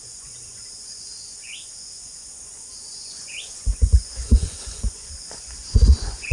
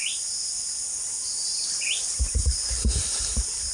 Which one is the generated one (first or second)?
first